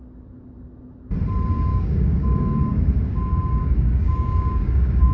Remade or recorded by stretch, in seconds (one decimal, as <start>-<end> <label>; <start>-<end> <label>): 0.0-1.7 recorded; 1.7-5.1 remade